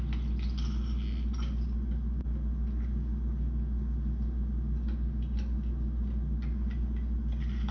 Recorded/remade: recorded